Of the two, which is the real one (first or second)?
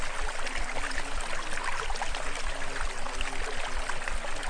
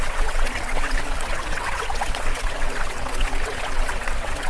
first